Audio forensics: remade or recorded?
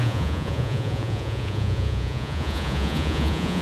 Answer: remade